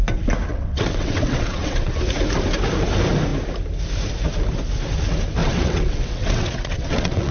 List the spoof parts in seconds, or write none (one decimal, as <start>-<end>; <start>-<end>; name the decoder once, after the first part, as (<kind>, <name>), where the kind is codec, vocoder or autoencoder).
0.5-1.9 (vocoder, WaveNeXt); 5.4-7.3